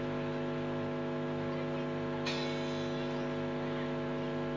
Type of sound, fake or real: real